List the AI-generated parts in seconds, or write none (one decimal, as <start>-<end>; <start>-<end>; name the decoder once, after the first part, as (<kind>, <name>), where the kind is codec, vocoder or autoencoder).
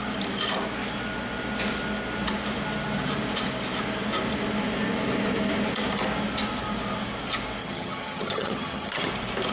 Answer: 7.6-9.1 (vocoder, HiFi-GAN)